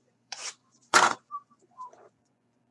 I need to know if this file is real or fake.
fake